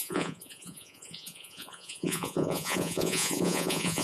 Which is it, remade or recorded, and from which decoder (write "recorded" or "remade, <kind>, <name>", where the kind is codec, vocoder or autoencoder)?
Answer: remade, vocoder, Vocos